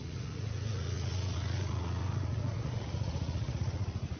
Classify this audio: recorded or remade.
remade